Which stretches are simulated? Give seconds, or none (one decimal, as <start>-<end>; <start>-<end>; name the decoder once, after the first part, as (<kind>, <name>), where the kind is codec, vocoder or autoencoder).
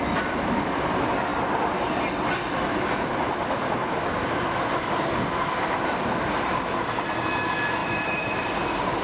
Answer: 7.8-8.6 (vocoder, BigVGAN v2)